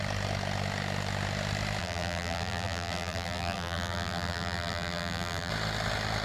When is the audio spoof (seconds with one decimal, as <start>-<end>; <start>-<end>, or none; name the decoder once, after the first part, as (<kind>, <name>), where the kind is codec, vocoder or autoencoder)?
1.8-5.5 (vocoder, BigVGAN v2)